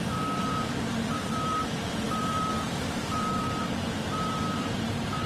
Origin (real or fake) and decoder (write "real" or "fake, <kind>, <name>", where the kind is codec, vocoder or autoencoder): fake, vocoder, BigVGAN v2